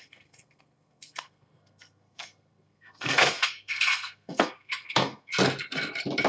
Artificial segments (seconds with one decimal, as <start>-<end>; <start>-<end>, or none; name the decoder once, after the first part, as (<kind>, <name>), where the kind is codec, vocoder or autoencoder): 0.0-5.3 (codec, SNAC)